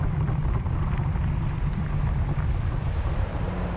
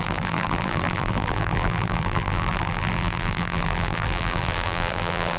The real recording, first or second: first